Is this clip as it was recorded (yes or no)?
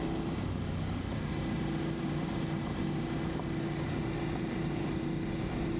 yes